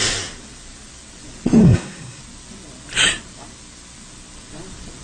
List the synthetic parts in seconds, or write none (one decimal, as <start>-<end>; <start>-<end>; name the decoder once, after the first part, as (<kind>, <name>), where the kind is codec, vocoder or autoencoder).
1.6-2.2 (codec, SNAC)